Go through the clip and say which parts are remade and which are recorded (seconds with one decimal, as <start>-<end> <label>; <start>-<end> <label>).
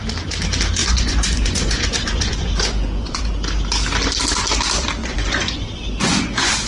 0.0-0.8 recorded; 0.8-3.2 remade; 3.2-5.0 recorded; 5.0-6.7 remade